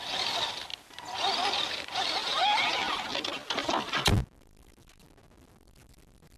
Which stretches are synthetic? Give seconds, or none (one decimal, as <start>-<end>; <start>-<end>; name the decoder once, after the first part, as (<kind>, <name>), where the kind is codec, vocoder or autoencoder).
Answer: none